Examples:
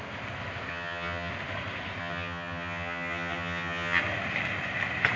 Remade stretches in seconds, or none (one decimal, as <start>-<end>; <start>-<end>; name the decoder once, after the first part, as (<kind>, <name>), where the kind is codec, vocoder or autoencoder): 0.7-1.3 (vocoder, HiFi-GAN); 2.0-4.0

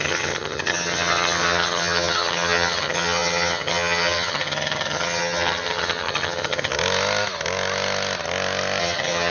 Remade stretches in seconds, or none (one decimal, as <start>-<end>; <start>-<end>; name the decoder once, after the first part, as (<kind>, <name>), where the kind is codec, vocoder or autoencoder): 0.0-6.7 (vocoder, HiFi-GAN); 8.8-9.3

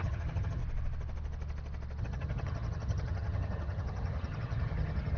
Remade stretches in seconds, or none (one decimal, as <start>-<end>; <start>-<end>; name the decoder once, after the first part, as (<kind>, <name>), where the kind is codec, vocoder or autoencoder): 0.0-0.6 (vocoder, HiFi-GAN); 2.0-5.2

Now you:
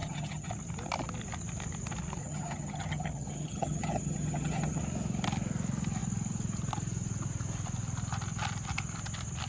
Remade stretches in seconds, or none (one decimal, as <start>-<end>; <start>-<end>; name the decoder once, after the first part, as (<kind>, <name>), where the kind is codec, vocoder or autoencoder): 0.0-0.5 (vocoder, HiFi-GAN); 2.2-4.8

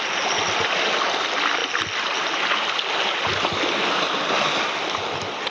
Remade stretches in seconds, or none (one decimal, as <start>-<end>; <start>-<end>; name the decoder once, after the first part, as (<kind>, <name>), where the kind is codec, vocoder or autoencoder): none

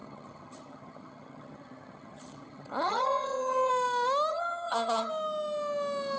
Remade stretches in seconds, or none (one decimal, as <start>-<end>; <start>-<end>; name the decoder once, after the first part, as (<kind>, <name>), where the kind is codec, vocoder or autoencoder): 0.0-3.7 (vocoder, HiFi-GAN); 4.3-5.1